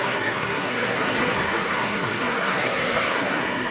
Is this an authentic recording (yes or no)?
no